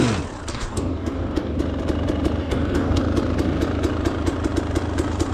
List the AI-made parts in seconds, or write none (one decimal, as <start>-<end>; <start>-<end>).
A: 0.5-1.6; 2.4-3.0